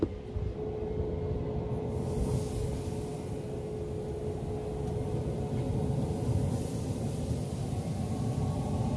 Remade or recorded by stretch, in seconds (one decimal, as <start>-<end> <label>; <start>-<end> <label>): 0.0-9.0 recorded